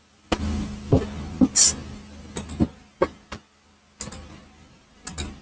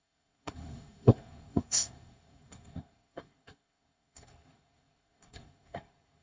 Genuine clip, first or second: first